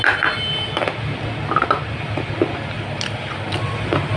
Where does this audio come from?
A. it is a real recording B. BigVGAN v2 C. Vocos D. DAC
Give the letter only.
A